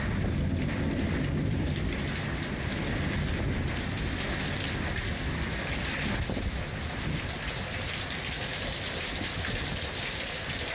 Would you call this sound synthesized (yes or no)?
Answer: no